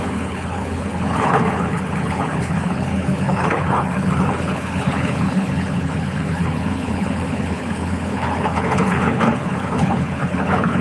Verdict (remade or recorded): remade